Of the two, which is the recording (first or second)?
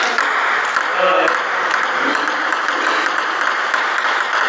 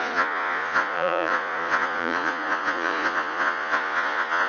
first